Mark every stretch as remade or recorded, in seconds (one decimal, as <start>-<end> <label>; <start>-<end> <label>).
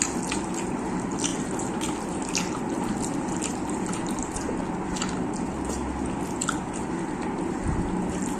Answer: 0.0-8.4 recorded